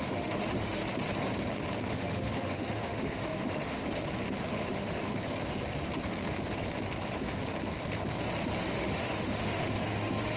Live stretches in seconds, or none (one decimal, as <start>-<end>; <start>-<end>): 0.8-1.9; 3.8-4.5; 5.1-8.7

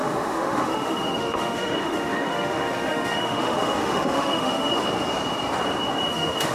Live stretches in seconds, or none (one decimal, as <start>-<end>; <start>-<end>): 4.8-6.1

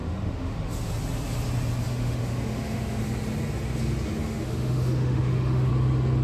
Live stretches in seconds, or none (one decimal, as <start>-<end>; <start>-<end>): 0.9-1.9; 3.0-4.2; 5.7-6.2

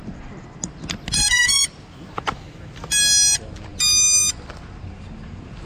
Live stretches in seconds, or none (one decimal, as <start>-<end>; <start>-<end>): 0.0-5.7

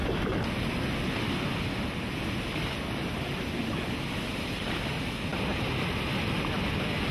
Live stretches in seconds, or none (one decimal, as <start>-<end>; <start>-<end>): 0.0-7.1

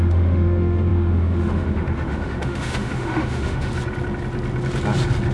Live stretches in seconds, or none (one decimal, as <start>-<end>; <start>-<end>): 3.7-5.3